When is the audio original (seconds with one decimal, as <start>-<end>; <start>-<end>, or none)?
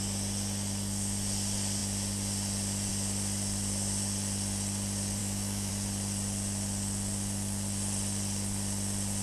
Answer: 0.0-5.2; 5.7-9.2